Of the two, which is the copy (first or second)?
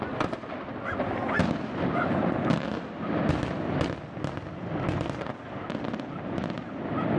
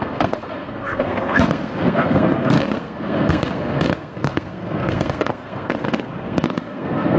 second